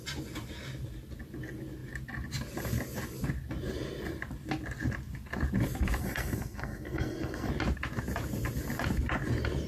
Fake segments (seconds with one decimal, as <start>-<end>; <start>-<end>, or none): 6.0-7.5